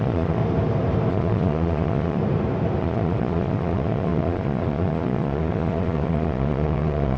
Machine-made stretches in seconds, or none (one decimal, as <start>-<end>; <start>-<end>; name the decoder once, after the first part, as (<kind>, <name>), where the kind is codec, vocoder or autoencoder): 0.0-0.4 (vocoder, Vocos); 1.1-2.2; 2.8-7.2